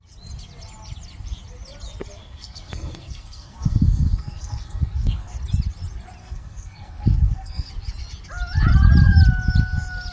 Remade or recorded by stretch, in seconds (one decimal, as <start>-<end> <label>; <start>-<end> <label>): 0.0-2.2 recorded; 2.2-5.3 remade; 5.3-6.2 recorded; 6.2-7.7 remade; 7.7-10.1 recorded